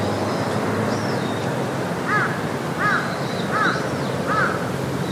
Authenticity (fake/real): real